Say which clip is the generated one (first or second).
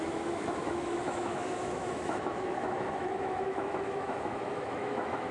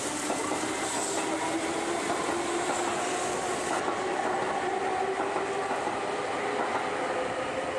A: first